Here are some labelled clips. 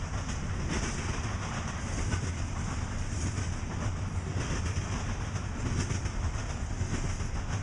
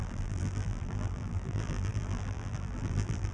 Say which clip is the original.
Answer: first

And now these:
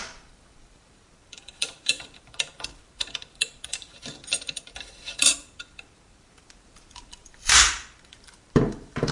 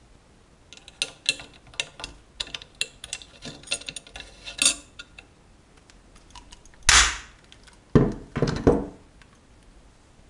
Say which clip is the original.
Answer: second